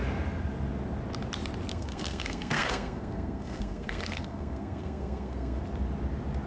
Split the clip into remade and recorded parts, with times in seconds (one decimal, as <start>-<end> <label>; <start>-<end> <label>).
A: 0.0-1.7 recorded; 1.7-5.6 remade; 5.6-6.5 recorded